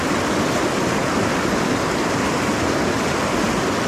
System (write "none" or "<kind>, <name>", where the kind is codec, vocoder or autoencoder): none